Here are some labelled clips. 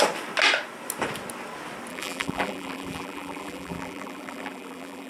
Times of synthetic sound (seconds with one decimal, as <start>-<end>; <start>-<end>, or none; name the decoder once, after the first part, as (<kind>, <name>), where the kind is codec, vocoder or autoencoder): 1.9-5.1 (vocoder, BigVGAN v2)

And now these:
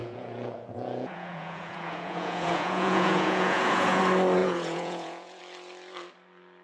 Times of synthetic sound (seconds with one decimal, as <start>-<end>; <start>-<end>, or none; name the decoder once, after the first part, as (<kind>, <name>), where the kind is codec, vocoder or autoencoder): 0.0-4.0 (vocoder, Vocos); 4.4-5.4

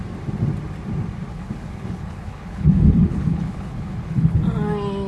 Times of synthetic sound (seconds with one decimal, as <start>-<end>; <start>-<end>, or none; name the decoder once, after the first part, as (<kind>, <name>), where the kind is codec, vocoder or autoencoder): 1.3-4.4 (codec, HILCodec)

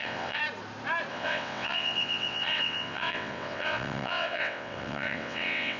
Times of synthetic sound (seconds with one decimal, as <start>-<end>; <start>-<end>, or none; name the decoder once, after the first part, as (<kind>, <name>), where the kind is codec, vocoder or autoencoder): 0.0-0.4 (vocoder, WaveNeXt); 1.1-5.8